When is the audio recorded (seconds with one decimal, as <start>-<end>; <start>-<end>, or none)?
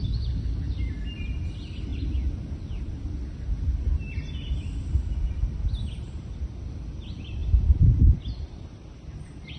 1.9-4.5; 7.4-8.7